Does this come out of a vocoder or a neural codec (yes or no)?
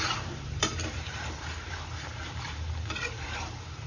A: yes